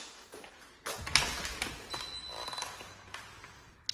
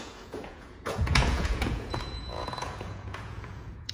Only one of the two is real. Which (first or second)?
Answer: first